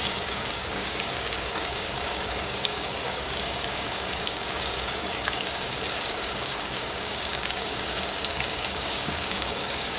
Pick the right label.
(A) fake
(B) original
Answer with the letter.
A